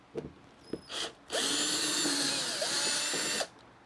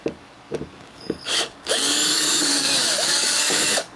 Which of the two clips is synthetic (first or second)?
second